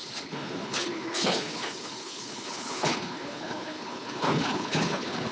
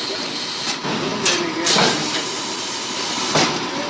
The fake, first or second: first